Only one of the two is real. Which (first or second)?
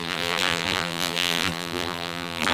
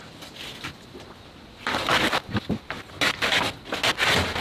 second